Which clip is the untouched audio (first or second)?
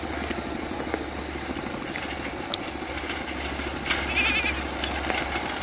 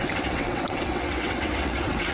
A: first